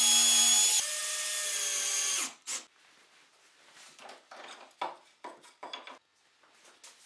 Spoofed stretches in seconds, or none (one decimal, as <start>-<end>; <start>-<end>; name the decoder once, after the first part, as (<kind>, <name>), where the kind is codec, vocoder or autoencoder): none

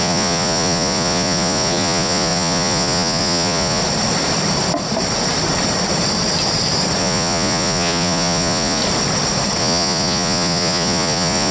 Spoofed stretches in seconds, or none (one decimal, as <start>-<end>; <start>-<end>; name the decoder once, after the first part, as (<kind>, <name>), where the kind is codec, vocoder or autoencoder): 0.0-3.8 (vocoder, Vocos); 7.0-8.8; 9.6-11.5